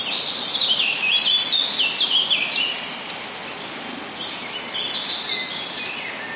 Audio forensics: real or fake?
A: real